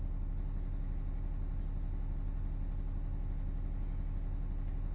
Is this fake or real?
real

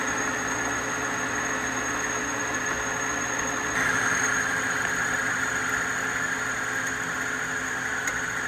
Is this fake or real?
real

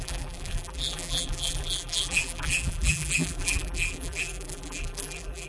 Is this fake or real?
fake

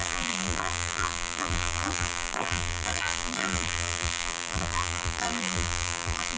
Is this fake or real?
fake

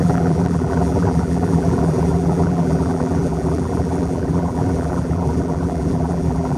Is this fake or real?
fake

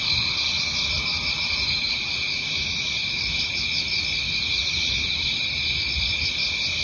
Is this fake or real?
real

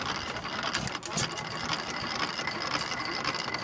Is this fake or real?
real